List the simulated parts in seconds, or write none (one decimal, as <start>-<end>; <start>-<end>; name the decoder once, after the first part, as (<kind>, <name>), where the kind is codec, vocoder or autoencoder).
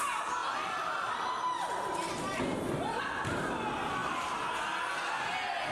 none